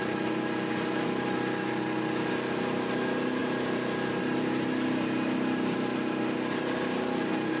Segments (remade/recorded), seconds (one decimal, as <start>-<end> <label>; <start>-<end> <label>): 0.0-7.6 recorded